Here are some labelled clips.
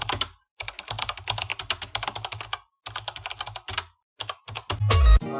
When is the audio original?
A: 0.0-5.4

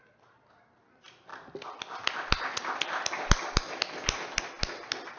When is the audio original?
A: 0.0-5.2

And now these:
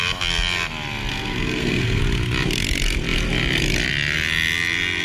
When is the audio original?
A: 0.0-1.1; 2.0-5.0

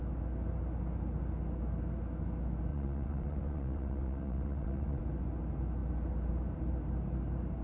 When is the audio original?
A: 0.0-2.7; 5.0-7.6

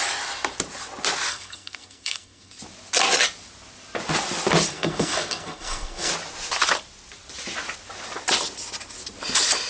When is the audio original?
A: 0.0-1.3; 2.6-4.7; 6.1-9.7